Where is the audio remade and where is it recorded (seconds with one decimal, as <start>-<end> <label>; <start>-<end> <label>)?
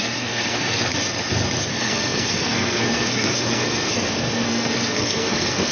0.0-0.9 remade; 0.9-1.7 recorded; 1.7-5.7 remade